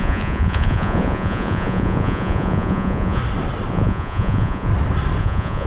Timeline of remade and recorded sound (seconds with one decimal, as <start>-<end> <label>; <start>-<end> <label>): 0.0-3.2 remade; 3.2-3.7 recorded; 3.7-4.7 remade; 4.7-5.2 recorded; 5.2-5.7 remade